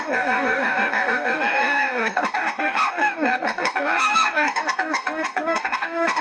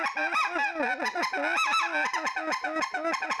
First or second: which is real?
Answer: second